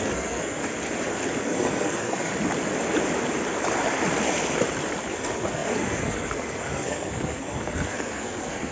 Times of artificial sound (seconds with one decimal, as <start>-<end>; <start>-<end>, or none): 0.0-0.6; 1.4-2.3; 5.1-8.7